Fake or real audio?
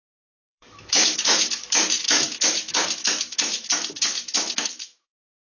fake